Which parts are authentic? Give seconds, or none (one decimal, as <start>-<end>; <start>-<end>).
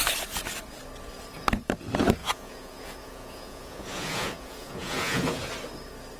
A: 0.0-2.2; 5.5-6.2